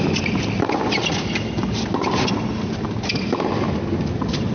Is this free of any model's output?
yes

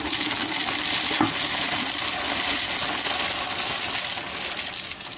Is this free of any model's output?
yes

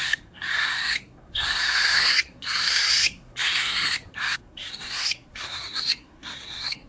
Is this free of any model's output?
no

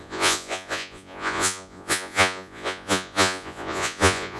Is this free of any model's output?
no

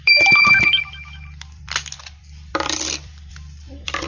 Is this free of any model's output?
no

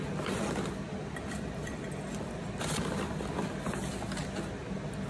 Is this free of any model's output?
yes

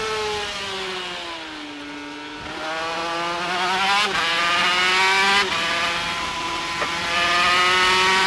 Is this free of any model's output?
yes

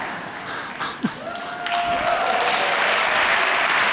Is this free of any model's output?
yes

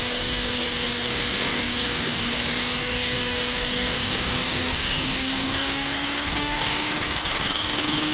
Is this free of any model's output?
no